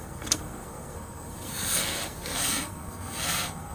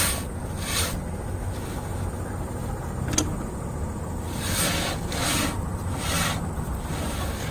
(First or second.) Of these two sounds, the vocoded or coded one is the first